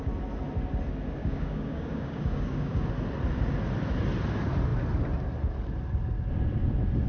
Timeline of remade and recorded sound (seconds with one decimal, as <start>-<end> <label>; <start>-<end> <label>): 0.0-1.2 recorded; 1.2-2.9 remade; 2.9-7.1 recorded